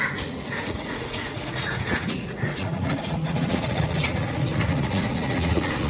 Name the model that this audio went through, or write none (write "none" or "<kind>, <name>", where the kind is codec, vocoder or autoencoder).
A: vocoder, Vocos